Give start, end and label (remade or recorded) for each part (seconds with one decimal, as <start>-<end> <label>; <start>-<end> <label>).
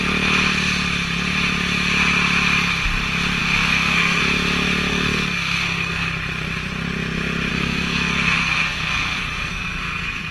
0.0-3.4 recorded; 3.4-4.2 remade; 4.2-4.9 recorded; 4.9-6.1 remade; 6.1-7.5 recorded; 7.5-10.3 remade